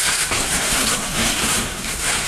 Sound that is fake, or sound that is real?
fake